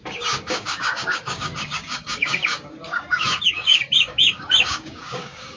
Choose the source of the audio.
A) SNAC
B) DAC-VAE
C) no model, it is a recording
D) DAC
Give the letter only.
D